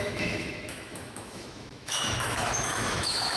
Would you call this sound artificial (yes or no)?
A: yes